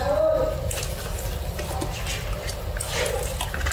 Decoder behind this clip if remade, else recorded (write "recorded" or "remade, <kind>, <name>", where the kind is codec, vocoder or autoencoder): recorded